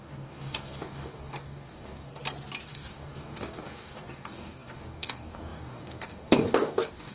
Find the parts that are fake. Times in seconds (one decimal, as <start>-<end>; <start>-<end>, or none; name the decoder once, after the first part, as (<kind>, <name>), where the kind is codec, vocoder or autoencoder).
0.0-2.1 (codec, DAC); 2.7-7.1